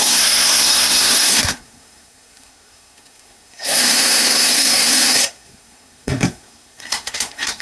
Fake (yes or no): yes